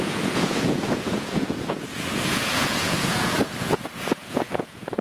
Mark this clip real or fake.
fake